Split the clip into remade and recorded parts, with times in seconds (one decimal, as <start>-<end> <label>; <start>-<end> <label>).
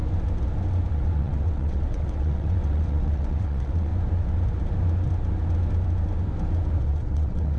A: 0.0-0.9 recorded; 0.9-3.9 remade; 3.9-6.8 recorded; 6.8-7.6 remade